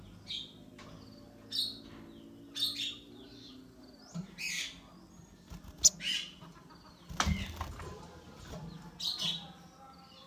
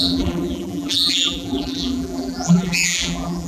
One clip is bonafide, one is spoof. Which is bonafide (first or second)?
first